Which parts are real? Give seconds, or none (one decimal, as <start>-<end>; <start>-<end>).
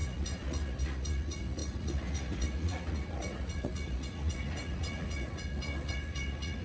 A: none